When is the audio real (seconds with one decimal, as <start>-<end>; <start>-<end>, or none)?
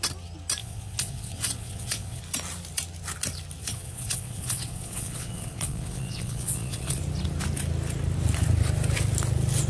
0.0-0.6; 2.2-3.6; 7.0-9.7